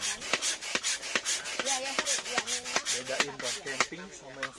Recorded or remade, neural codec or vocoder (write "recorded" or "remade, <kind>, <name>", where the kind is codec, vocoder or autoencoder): recorded